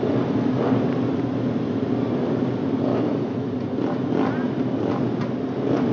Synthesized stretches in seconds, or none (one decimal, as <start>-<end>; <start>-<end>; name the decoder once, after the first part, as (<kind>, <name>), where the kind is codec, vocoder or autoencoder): 2.9-3.5 (autoencoder, DAC-VAE)